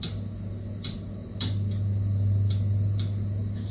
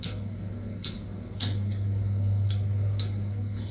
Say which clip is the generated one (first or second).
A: second